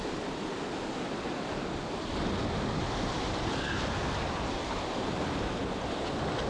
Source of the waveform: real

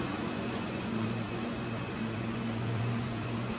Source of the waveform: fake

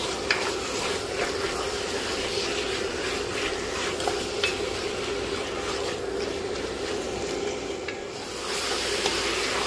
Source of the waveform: real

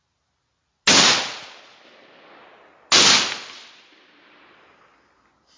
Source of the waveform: real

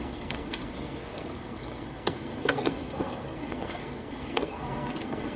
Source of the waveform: fake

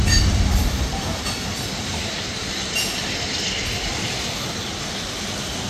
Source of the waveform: real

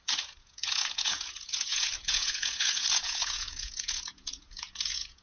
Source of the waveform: fake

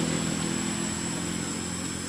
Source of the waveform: real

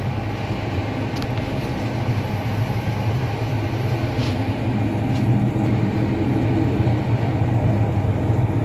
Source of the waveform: real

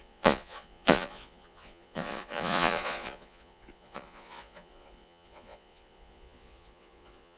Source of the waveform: fake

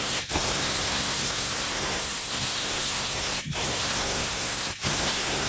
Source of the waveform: fake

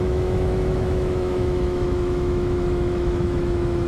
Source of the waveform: fake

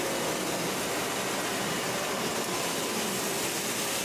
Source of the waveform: real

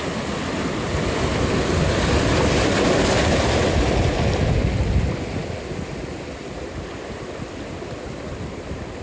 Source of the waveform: real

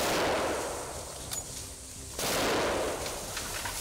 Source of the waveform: real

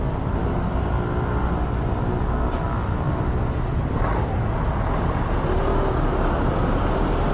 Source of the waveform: real